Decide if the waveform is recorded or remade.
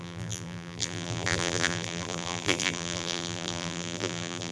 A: remade